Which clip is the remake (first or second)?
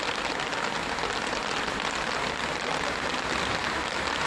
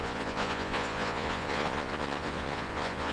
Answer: second